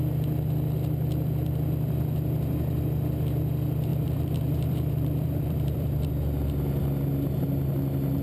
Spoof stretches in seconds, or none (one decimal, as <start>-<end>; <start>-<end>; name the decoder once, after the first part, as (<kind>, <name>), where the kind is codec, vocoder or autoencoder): 3.9-6.1 (vocoder, BigVGAN v2)